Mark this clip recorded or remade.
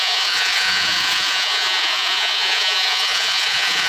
remade